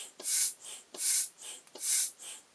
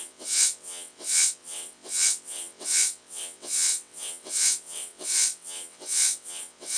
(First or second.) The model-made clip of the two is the second